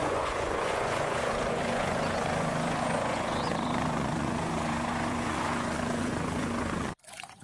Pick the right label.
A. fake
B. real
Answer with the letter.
A